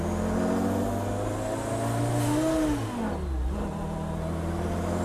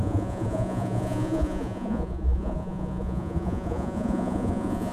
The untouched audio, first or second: first